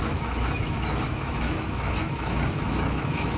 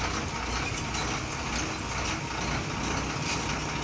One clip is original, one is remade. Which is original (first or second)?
second